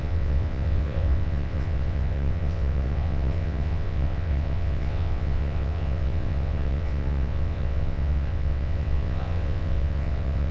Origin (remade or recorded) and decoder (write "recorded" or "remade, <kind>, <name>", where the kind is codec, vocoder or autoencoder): remade, vocoder, WaveNeXt